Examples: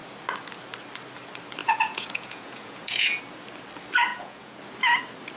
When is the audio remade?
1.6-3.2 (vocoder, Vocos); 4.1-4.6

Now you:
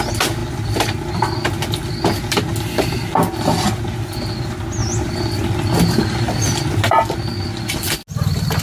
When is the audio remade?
0.4-1.1 (vocoder, BigVGAN v2)

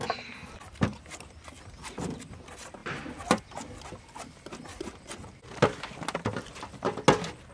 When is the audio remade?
none

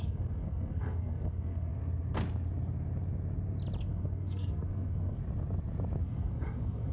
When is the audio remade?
0.0-1.7 (codec, SNAC); 3.8-5.2; 6.0-6.9

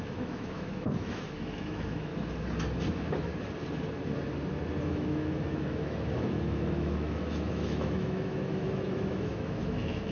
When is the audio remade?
0.0-2.1 (autoencoder, DAC-VAE); 2.9-3.3; 4.8-10.1

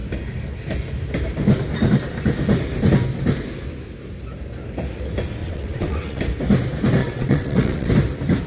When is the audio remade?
5.4-6.2 (vocoder, WaveNeXt); 7.0-7.9